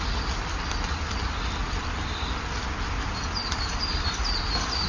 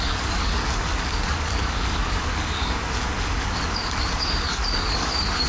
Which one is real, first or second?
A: first